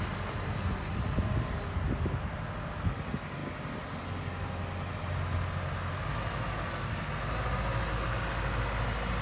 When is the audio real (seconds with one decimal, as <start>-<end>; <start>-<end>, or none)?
0.0-9.2

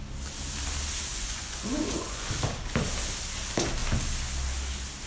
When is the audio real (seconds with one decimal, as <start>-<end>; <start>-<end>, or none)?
0.0-1.1; 2.3-5.1

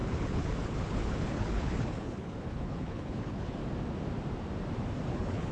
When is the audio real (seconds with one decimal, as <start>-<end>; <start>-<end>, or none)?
3.6-5.1

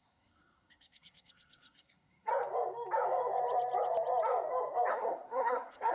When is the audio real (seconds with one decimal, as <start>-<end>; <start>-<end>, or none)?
2.3-4.9

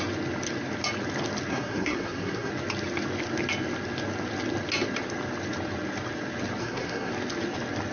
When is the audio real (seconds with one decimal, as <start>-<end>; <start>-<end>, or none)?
0.0-1.5; 2.5-6.6; 7.1-7.9

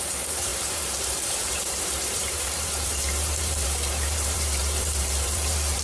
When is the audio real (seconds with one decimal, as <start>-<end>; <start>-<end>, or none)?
none

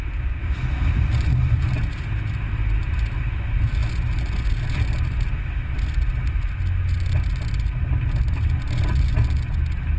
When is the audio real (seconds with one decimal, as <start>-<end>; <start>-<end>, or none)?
0.0-10.0

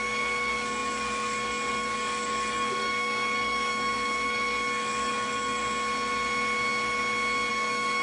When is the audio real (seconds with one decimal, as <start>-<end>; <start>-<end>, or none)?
5.6-7.5